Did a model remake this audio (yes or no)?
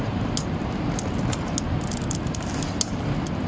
no